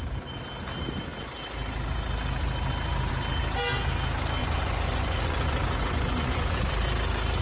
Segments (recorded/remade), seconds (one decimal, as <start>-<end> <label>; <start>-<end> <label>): 0.0-4.4 recorded; 4.4-6.7 remade; 6.7-7.4 recorded